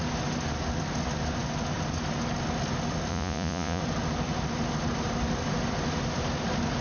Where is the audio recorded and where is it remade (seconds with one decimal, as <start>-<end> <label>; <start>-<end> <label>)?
0.0-3.1 recorded; 3.1-3.8 remade; 3.8-6.8 recorded